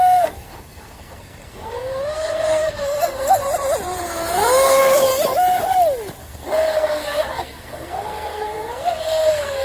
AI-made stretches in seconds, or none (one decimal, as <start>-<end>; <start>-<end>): 0.0-3.4; 4.0-5.1; 6.2-9.6